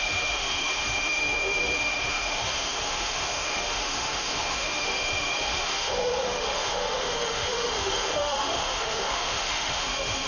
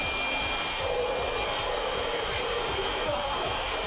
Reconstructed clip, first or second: first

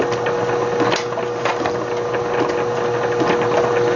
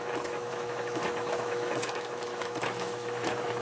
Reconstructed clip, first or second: second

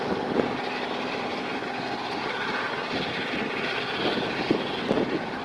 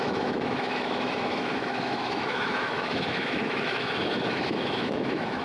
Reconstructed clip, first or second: second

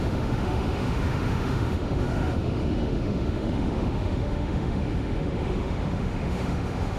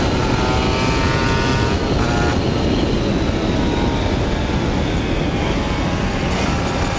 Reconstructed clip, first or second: first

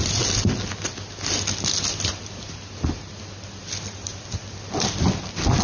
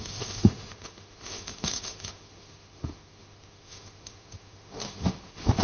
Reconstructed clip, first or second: second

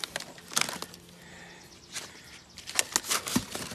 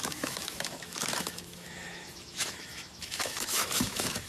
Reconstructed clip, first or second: second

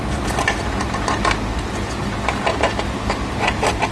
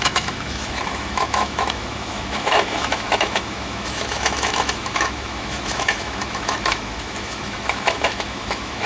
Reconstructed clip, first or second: second